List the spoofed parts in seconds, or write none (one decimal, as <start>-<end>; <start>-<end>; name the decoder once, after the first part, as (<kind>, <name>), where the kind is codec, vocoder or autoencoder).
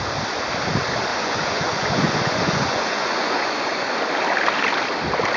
1.1-4.0 (vocoder, Vocos)